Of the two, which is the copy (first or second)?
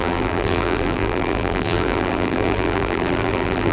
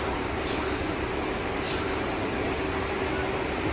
first